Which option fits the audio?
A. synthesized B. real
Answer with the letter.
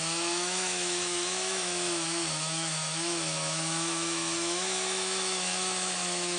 A